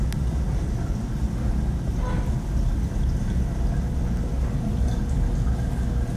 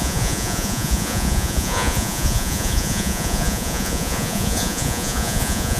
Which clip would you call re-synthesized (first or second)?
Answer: second